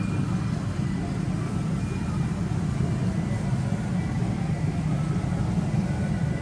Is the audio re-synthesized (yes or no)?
no